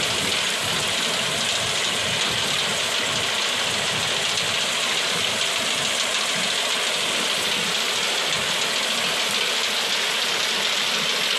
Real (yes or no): yes